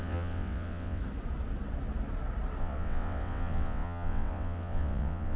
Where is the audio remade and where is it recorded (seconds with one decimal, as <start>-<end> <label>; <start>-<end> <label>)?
0.0-1.0 remade; 1.0-2.6 recorded; 2.6-5.4 remade